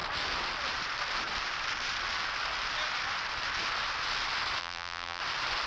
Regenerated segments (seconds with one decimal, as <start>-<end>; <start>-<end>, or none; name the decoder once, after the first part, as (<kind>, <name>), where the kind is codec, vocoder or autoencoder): 4.6-5.2 (vocoder, BigVGAN v2)